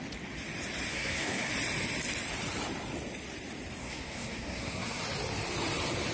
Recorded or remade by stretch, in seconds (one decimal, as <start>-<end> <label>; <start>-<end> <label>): 0.0-0.9 recorded; 0.9-1.5 remade; 1.5-3.8 recorded; 3.8-5.0 remade; 5.0-6.1 recorded